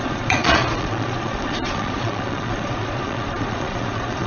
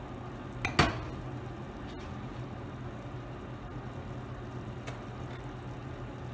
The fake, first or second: first